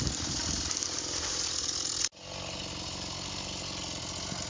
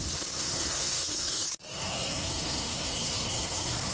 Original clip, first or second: first